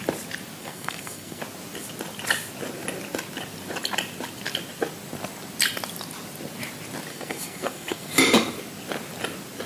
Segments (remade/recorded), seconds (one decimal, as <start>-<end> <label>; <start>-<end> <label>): 0.0-0.6 recorded; 0.6-1.4 remade; 1.4-7.1 recorded; 7.1-8.1 remade; 8.1-9.7 recorded